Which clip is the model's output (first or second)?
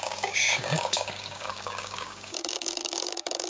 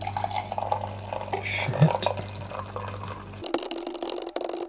first